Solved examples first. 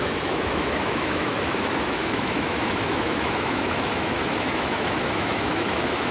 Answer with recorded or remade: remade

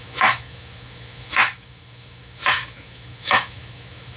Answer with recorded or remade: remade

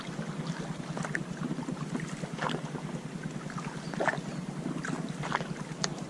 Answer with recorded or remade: recorded